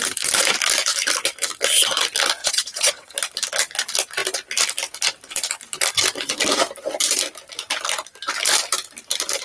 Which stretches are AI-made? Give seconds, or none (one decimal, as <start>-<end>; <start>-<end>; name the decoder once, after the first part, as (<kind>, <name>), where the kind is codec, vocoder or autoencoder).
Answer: 2.4-3.1 (vocoder, WaveNeXt)